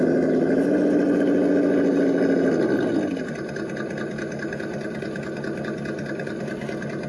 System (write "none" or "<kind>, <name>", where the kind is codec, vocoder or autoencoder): none